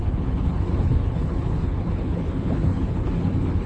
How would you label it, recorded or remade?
remade